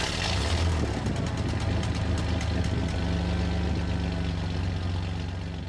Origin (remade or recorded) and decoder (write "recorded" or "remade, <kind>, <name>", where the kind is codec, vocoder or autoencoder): recorded